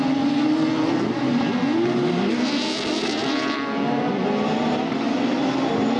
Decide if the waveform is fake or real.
real